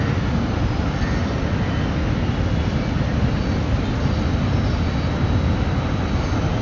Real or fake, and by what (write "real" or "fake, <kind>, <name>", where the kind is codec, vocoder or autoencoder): real